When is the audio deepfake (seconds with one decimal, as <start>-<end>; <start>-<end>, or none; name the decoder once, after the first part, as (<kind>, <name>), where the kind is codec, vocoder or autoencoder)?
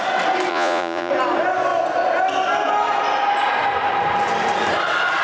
0.5-1.1 (vocoder, Vocos)